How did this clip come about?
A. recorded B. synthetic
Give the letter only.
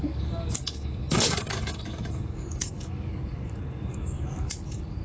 B